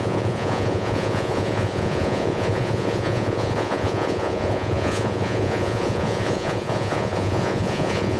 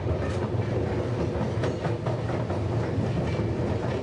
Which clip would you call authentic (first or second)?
second